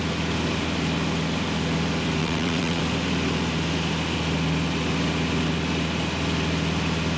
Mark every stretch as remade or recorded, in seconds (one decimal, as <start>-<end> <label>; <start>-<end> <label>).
0.0-2.2 recorded; 2.2-2.8 remade; 2.8-7.2 recorded